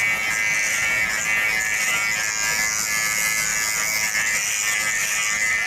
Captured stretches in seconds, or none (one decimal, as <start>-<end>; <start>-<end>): 0.0-5.7